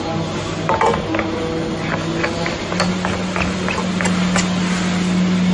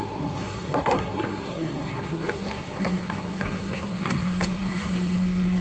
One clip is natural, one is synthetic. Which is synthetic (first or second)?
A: second